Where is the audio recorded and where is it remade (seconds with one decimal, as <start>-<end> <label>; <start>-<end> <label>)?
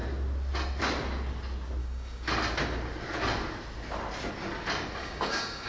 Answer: 0.0-1.8 recorded; 1.8-2.3 remade; 2.3-5.0 recorded; 5.0-5.7 remade